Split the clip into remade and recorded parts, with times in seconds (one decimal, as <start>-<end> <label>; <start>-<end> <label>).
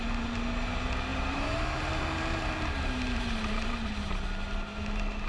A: 0.0-1.1 recorded; 1.1-4.1 remade; 4.1-5.3 recorded